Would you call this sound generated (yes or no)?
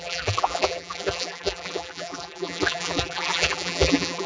yes